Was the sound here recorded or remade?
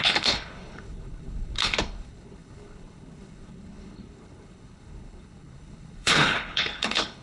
remade